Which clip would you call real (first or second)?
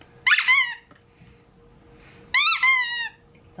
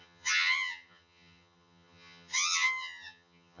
first